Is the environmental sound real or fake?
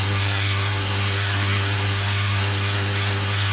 fake